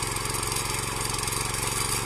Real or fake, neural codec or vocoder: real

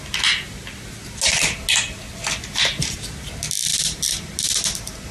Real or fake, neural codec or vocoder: real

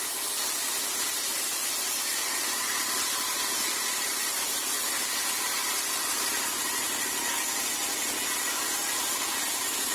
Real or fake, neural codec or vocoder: real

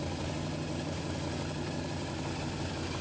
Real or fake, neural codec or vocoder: fake, vocoder, BigVGAN v2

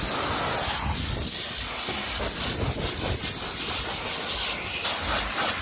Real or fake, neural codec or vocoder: real